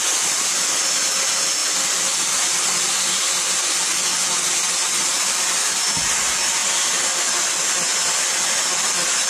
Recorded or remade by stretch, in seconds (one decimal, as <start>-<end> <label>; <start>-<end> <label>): 0.0-9.3 recorded